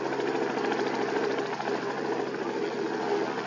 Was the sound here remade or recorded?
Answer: recorded